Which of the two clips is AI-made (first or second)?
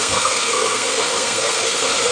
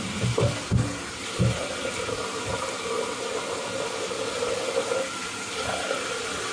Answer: first